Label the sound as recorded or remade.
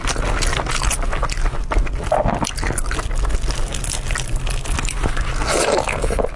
recorded